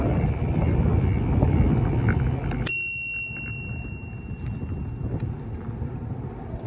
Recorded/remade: recorded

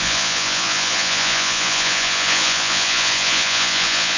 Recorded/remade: remade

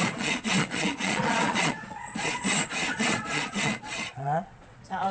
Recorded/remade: remade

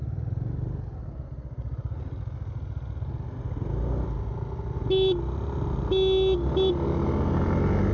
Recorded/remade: recorded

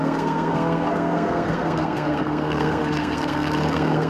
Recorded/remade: remade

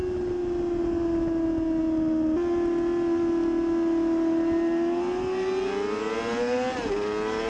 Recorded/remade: recorded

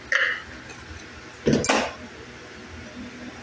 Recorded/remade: recorded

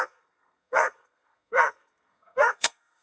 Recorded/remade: remade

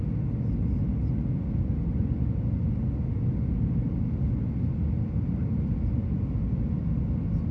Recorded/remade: recorded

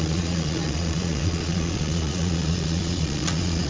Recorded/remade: remade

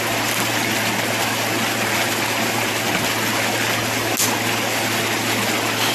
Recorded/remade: recorded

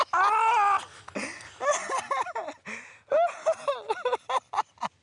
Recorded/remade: recorded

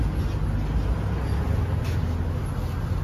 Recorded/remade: recorded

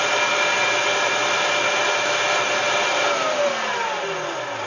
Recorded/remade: recorded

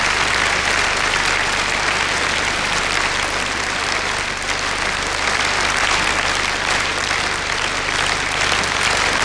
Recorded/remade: recorded